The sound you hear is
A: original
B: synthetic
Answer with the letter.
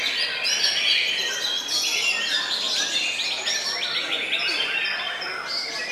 A